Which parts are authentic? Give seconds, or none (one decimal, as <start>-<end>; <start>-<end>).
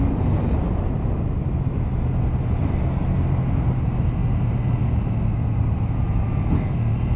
0.0-7.2